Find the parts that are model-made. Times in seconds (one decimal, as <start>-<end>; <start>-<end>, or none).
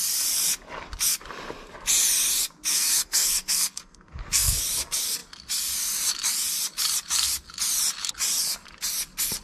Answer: 2.7-4.6